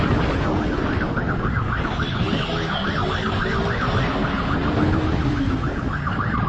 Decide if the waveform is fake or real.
real